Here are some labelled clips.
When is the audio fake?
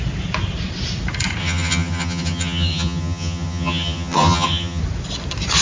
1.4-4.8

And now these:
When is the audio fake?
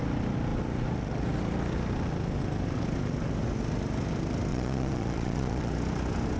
4.5-5.7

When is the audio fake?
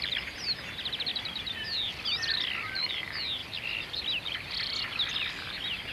1.1-3.0; 3.4-5.1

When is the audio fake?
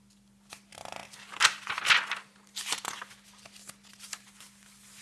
none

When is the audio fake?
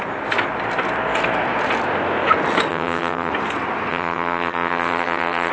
2.7-3.3; 3.9-5.5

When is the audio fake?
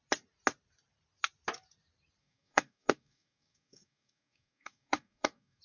2.2-5.6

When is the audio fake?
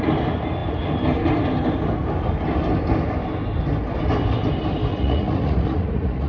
4.9-6.3